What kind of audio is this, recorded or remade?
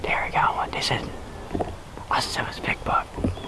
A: recorded